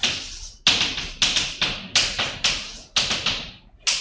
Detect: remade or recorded recorded